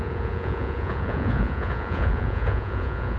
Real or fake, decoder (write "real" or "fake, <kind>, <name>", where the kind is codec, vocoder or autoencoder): fake, vocoder, Vocos